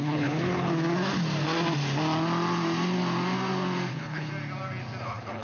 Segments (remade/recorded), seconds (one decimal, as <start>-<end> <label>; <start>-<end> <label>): 0.0-0.7 remade; 0.7-3.9 recorded; 3.9-4.3 remade; 4.3-5.0 recorded; 5.0-5.4 remade